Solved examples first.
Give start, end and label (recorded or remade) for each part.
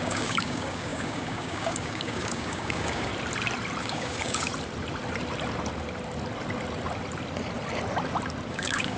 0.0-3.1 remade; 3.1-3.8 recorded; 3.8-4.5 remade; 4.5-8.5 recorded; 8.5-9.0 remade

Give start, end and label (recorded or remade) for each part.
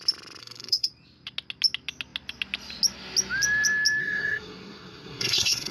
0.0-0.4 recorded; 0.4-0.9 remade; 0.9-4.0 recorded; 4.0-5.7 remade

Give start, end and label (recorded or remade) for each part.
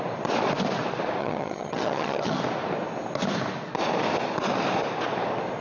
0.0-1.2 recorded; 1.2-2.4 remade; 2.4-5.6 recorded